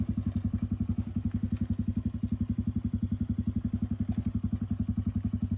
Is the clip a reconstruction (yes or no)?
no